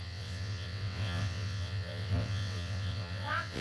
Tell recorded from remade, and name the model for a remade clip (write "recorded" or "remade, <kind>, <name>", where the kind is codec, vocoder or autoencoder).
remade, vocoder, WaveNeXt